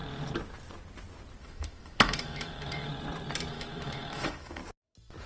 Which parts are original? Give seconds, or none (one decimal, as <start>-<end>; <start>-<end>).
0.0-1.4; 2.9-3.5; 4.6-5.3